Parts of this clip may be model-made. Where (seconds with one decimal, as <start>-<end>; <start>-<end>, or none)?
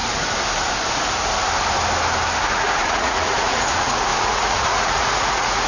2.4-5.7